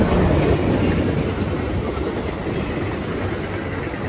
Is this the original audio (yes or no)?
yes